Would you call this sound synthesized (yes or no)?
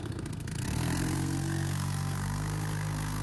yes